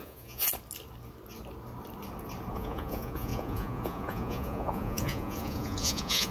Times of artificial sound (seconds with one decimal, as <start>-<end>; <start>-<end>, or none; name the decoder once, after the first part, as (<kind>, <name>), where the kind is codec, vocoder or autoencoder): 0.0-0.5 (vocoder, Vocos); 2.5-6.3

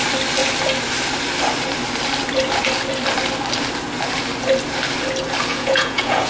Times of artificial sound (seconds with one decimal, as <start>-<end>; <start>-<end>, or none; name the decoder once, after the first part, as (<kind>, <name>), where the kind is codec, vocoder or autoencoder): 5.5-6.3 (vocoder, Vocos)

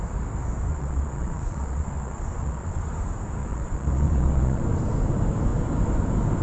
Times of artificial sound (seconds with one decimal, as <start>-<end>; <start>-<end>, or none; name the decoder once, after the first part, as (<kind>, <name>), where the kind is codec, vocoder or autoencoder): 0.7-2.8 (vocoder, Vocos); 3.4-4.6

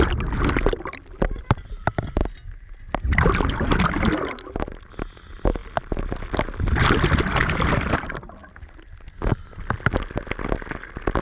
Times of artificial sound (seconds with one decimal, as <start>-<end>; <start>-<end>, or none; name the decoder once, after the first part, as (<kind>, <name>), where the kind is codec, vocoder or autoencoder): none

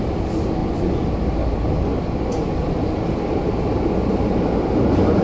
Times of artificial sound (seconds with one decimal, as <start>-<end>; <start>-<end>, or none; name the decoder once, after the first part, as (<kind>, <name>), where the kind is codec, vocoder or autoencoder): 0.6-1.1 (vocoder, Vocos)

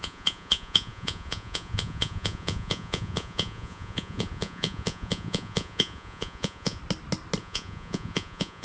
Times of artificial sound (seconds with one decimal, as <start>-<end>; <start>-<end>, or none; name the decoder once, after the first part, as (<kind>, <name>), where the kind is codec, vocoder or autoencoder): 0.0-6.8 (vocoder, Vocos); 7.4-8.6